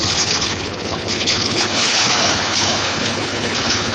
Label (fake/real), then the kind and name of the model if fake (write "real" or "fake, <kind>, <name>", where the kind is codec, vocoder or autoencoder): fake, codec, HILCodec